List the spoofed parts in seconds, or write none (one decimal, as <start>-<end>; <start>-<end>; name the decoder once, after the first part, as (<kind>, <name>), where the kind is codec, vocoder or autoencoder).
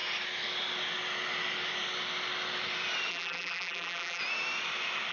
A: 3.1-4.2 (vocoder, BigVGAN v2)